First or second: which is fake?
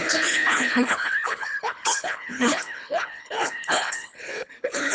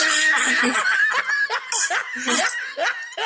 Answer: first